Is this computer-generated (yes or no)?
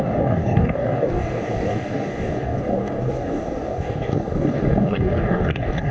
yes